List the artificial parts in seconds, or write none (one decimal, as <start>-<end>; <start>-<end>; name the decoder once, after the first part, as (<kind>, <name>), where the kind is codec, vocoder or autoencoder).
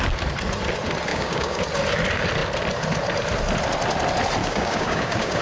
1.1-1.6 (codec, DAC); 4.4-5.4